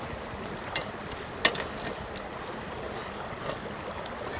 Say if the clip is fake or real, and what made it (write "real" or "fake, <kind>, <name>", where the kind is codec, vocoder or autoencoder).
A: real